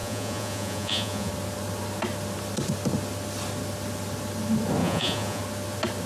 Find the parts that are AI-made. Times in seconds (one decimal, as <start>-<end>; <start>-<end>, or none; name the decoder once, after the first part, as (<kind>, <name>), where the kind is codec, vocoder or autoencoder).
0.0-1.3 (vocoder, Vocos); 4.8-5.4

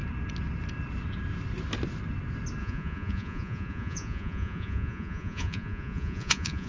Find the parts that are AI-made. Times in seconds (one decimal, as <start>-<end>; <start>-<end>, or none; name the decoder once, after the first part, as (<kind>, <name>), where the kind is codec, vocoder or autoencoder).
2.6-6.7 (vocoder, Vocos)